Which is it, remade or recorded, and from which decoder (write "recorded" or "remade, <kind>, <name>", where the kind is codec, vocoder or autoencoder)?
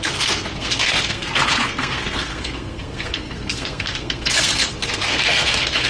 remade, codec, SNAC